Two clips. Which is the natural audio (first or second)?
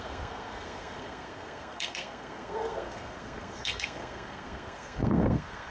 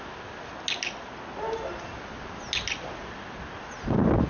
second